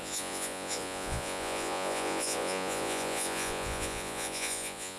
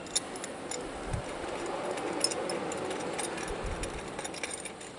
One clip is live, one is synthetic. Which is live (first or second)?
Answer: second